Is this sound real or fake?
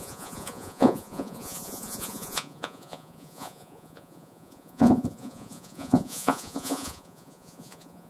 fake